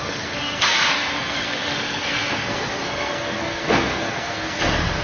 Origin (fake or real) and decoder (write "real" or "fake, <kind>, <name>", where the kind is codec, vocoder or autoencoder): fake, codec, SNAC